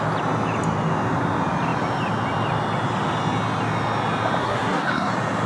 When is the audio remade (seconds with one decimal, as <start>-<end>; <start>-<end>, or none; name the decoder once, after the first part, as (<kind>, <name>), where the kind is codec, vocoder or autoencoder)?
4.4-5.1 (codec, SNAC)